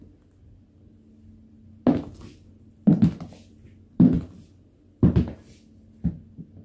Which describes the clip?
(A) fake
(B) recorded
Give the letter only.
B